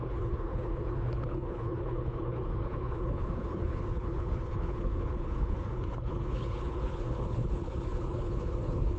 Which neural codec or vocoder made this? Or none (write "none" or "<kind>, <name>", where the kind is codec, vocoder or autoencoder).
codec, HILCodec